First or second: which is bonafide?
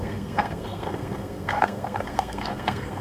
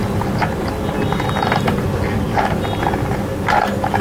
second